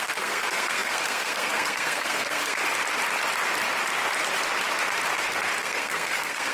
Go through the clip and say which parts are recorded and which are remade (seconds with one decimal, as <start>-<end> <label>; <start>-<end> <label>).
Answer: 0.0-2.6 remade; 2.6-5.6 recorded; 5.6-6.5 remade

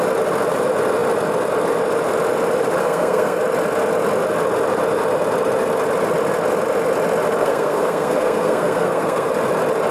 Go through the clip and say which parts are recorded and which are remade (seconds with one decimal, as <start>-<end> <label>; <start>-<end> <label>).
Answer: 0.0-2.8 recorded; 2.8-3.4 remade; 3.4-7.4 recorded; 7.4-9.3 remade; 9.3-9.9 recorded

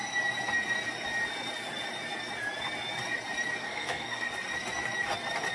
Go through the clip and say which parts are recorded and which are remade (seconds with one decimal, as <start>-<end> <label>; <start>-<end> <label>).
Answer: 0.0-3.6 recorded; 3.6-4.3 remade; 4.3-5.5 recorded

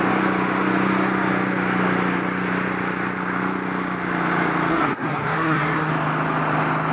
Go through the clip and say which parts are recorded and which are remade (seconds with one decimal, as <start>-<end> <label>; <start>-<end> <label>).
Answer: 0.0-4.7 recorded; 4.7-5.9 remade; 5.9-6.9 recorded

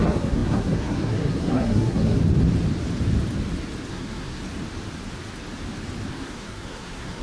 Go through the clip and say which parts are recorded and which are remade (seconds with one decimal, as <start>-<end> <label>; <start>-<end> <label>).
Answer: 0.0-2.2 remade; 2.2-3.9 recorded; 3.9-4.4 remade; 4.4-6.1 recorded; 6.1-7.2 remade

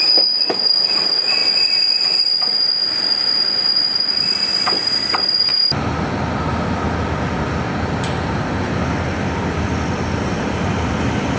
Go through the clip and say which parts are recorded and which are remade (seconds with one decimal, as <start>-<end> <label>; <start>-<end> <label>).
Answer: 0.0-11.4 recorded

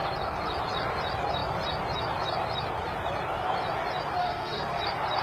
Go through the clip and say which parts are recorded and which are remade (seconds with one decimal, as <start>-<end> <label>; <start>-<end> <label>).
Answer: 0.0-4.2 recorded; 4.2-4.8 remade; 4.8-5.2 recorded